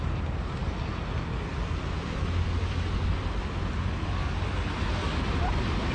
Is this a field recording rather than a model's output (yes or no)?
yes